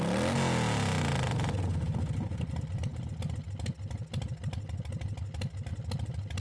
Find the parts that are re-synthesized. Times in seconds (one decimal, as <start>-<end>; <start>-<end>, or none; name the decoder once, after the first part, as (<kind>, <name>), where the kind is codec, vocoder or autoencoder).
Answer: none

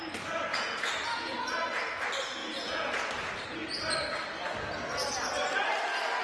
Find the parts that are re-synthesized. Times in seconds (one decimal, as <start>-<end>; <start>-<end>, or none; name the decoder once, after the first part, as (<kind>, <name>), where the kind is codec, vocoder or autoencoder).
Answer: 0.5-2.0 (vocoder, Vocos); 2.4-3.1